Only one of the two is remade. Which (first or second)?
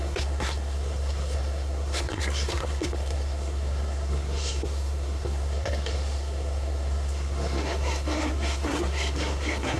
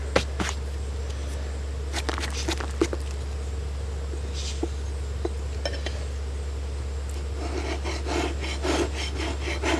first